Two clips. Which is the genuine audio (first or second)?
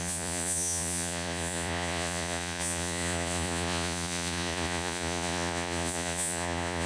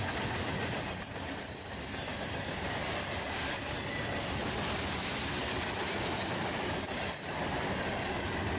second